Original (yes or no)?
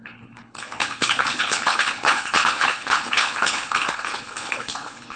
no